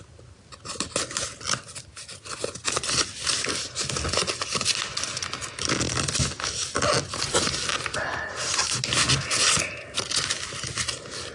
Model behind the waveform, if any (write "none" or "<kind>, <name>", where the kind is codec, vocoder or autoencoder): none